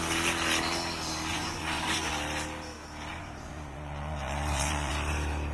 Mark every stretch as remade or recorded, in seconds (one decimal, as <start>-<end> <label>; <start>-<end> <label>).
0.0-1.3 recorded; 1.3-2.1 remade; 2.1-3.1 recorded; 3.1-4.9 remade; 4.9-5.5 recorded